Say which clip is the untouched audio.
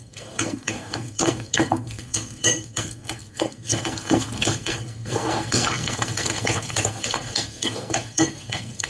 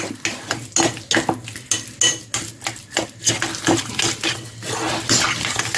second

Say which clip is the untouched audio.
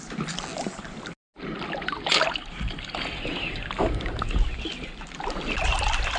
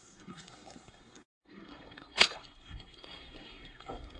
first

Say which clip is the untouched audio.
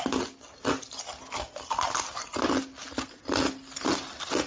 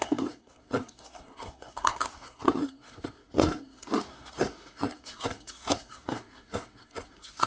first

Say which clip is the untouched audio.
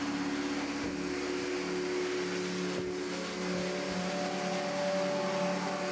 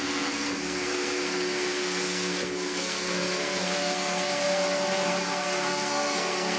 first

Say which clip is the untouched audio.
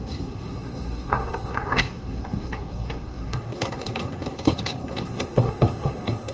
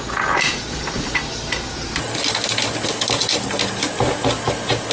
second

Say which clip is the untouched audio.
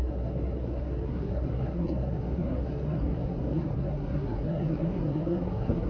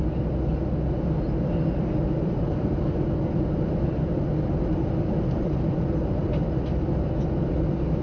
second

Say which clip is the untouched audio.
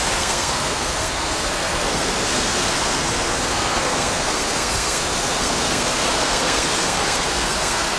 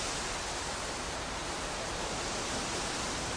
second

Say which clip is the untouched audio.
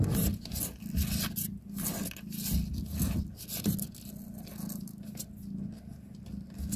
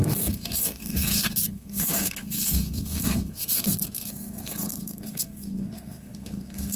first